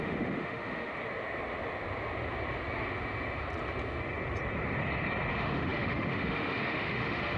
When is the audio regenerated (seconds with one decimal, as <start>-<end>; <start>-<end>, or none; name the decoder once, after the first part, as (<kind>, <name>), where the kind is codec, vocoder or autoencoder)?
0.0-0.9 (autoencoder, DAC-VAE); 5.3-7.4